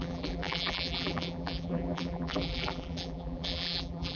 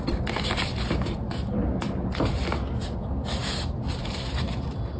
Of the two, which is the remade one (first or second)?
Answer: first